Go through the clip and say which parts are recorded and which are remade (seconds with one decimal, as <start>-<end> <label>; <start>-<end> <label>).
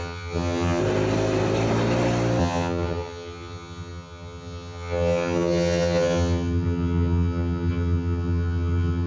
0.0-0.8 remade; 0.8-2.4 recorded; 2.4-9.1 remade